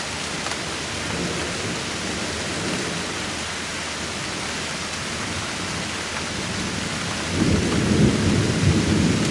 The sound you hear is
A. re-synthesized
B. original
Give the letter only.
B